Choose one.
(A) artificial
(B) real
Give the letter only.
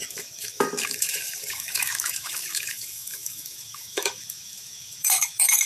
A